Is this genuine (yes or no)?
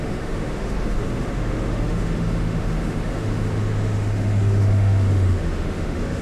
no